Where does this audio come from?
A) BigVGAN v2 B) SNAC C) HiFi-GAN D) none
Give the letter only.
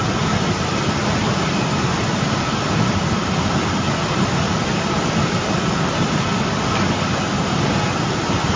D